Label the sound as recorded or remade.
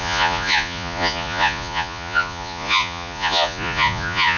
remade